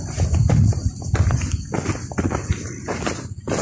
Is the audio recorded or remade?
recorded